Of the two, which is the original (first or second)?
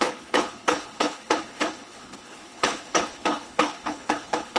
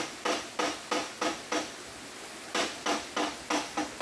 second